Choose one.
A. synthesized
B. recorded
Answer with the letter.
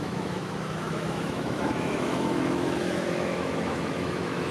A